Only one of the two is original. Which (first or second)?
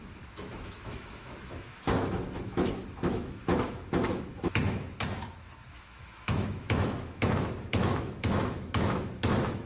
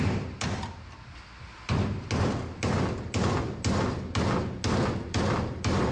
second